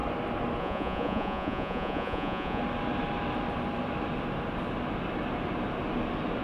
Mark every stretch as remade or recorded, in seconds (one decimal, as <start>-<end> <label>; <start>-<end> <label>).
0.0-0.6 recorded; 0.6-2.6 remade; 2.6-6.4 recorded